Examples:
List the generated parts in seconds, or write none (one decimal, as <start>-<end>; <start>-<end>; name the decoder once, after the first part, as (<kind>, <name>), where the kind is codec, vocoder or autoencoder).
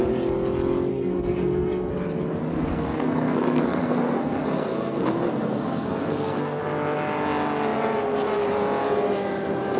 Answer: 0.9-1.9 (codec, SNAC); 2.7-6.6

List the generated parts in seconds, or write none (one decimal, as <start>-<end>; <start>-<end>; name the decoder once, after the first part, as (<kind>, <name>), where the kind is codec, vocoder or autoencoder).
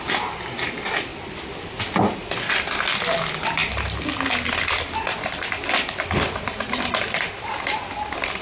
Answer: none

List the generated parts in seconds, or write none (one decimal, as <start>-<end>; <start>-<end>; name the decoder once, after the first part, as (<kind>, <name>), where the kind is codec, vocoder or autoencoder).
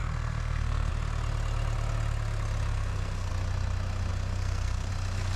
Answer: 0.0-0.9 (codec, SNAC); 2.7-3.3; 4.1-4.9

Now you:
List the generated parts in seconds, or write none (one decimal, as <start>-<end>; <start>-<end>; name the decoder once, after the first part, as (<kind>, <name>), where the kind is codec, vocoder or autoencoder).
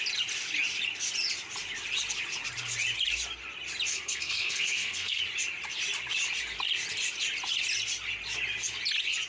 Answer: 3.9-5.2 (codec, SNAC)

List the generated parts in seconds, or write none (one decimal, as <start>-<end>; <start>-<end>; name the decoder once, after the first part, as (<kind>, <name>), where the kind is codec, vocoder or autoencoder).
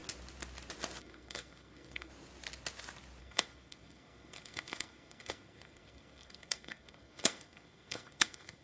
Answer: 1.0-2.1 (codec, SNAC); 3.2-8.6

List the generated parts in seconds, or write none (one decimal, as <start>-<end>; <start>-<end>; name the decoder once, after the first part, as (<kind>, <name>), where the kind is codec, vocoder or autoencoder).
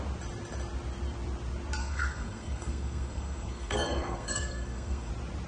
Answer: 1.8-5.1 (codec, SNAC)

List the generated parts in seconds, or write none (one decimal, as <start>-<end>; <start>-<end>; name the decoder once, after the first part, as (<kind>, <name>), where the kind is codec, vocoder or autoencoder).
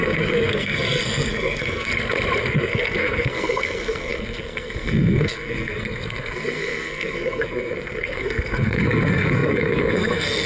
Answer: 0.0-1.9 (codec, SNAC); 2.4-10.5